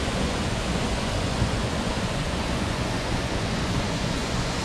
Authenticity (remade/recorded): remade